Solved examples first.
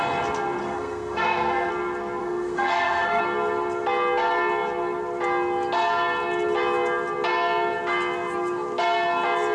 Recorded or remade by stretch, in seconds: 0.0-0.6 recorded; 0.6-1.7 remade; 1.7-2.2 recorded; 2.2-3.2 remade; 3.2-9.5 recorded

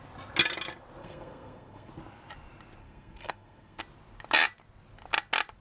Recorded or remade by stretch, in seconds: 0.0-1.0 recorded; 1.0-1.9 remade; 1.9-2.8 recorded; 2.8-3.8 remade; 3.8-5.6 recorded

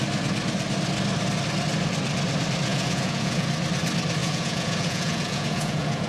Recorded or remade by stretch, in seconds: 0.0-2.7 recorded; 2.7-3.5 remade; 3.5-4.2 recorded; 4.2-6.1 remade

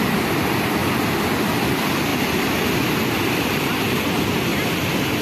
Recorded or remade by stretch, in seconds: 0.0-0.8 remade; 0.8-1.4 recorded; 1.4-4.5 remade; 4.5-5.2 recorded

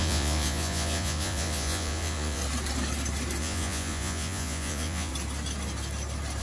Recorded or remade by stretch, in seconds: 0.0-2.4 remade; 2.4-3.4 recorded; 3.4-5.1 remade; 5.1-6.4 recorded

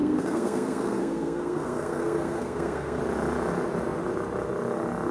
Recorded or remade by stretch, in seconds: 0.0-3.0 remade; 3.0-5.1 recorded

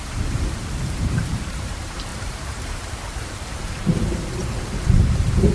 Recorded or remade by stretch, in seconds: 0.0-5.5 remade

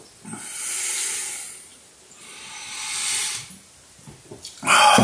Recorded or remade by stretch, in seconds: 0.0-5.0 recorded